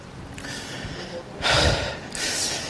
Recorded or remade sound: recorded